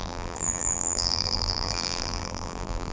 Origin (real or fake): fake